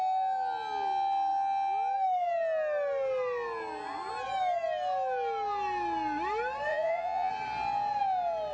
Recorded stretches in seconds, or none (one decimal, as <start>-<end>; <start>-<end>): 0.0-6.7; 7.3-8.5